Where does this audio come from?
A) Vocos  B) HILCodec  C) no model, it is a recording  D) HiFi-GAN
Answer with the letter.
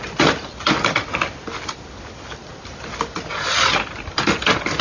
C